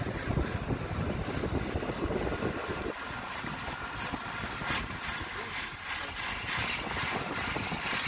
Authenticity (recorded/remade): recorded